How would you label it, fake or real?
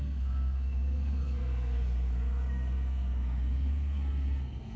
fake